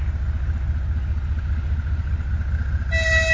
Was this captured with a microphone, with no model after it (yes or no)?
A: yes